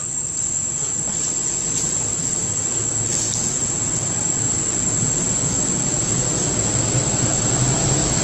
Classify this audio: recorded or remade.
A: recorded